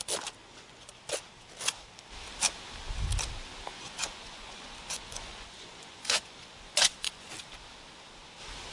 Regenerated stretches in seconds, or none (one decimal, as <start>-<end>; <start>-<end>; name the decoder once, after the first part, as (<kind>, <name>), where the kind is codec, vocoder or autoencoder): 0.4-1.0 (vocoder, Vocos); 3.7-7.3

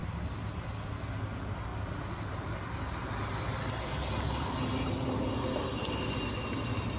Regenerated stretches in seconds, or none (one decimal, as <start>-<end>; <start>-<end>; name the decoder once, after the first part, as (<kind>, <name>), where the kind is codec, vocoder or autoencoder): none

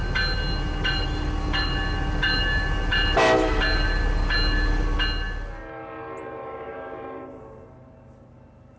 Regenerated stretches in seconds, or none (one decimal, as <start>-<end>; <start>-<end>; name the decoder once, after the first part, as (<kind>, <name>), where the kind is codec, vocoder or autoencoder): 6.4-7.4 (codec, DAC)